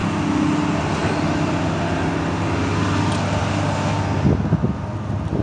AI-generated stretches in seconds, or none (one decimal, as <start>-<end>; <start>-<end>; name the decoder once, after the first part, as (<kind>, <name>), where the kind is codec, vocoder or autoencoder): none